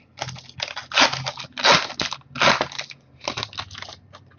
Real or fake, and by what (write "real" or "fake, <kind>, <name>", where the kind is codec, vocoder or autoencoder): real